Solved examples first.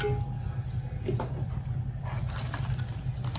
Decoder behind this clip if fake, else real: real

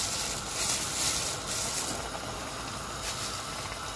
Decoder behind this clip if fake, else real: real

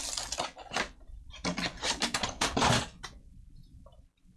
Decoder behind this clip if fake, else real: fake, vocoder, BigVGAN v2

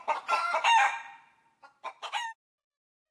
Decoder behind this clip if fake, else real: real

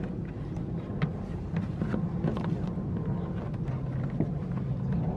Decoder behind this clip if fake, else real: real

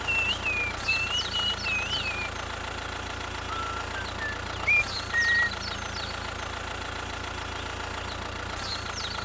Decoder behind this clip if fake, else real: real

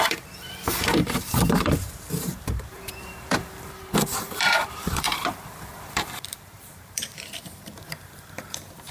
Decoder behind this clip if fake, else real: fake, vocoder, BigVGAN v2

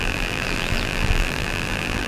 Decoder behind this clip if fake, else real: fake, vocoder, BigVGAN v2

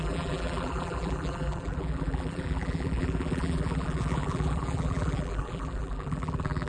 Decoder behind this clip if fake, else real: fake, vocoder, BigVGAN v2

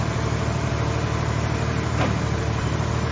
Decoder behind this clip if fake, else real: fake, vocoder, BigVGAN v2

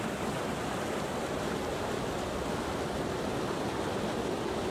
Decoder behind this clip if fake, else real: real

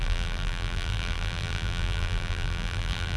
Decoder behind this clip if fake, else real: fake, vocoder, BigVGAN v2